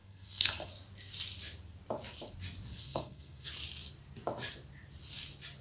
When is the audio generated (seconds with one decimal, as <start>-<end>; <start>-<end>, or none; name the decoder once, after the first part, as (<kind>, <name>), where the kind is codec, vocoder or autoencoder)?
0.0-0.7 (codec, SNAC); 2.7-3.5